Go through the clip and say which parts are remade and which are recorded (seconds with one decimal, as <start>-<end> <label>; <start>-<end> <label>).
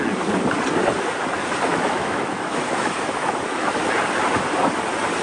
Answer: 0.0-1.7 recorded; 1.7-3.8 remade; 3.8-5.2 recorded